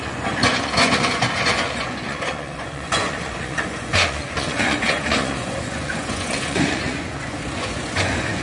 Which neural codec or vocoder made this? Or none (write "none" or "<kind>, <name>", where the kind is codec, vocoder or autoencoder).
vocoder, Vocos